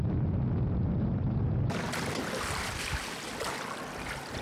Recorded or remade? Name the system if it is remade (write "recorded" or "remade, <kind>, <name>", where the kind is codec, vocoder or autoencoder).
recorded